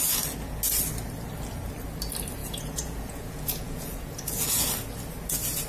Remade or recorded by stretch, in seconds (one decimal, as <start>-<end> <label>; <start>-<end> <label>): 0.0-2.4 recorded; 2.4-4.7 remade; 4.7-5.7 recorded